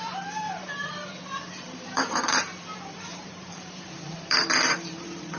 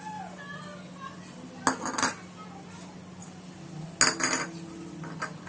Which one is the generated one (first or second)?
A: first